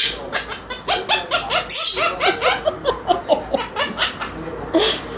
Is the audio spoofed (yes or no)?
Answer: no